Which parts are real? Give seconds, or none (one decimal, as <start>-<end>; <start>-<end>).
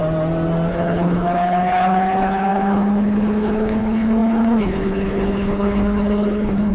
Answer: 0.0-0.7